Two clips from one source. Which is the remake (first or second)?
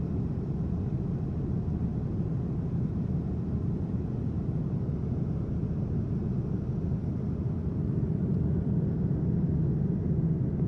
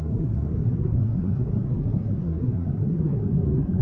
second